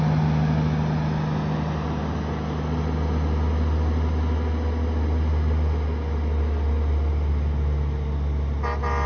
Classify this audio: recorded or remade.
recorded